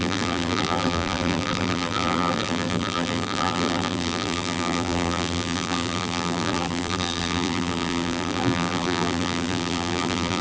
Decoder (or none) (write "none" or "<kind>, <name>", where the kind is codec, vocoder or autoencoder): vocoder, BigVGAN v2